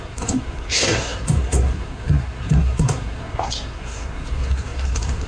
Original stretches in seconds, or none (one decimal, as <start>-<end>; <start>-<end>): none